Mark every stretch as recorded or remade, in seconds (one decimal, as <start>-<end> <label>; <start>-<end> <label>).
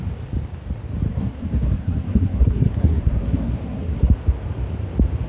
0.0-1.1 recorded; 1.1-4.1 remade; 4.1-5.3 recorded